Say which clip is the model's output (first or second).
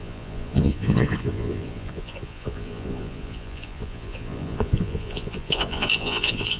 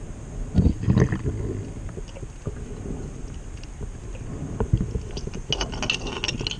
first